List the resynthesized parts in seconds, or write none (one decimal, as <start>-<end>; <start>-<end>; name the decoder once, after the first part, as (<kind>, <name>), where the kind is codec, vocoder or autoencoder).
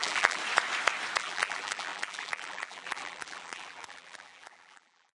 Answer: 0.0-0.4 (vocoder, BigVGAN v2); 1.2-5.2